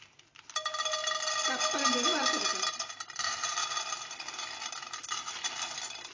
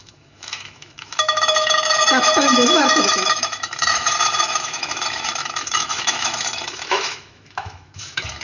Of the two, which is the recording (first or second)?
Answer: first